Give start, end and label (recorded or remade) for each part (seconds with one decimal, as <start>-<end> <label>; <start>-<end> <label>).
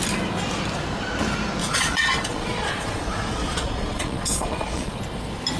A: 0.0-1.6 recorded; 1.6-5.0 remade; 5.0-5.6 recorded